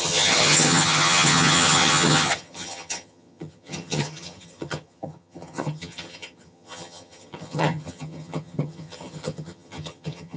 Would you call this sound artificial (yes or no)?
yes